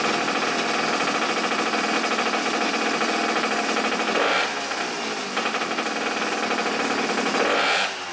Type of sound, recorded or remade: recorded